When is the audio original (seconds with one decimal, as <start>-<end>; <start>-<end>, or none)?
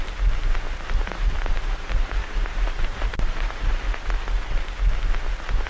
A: 0.0-0.4; 3.8-5.7